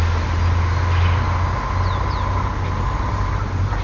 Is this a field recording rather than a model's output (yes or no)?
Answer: yes